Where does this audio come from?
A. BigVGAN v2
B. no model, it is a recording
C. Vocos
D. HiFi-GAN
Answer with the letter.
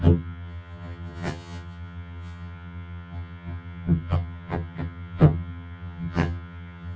D